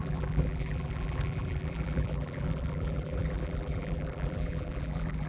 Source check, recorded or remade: remade